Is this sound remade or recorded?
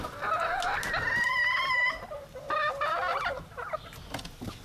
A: recorded